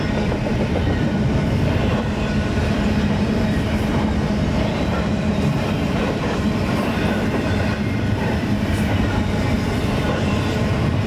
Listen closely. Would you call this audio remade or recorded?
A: remade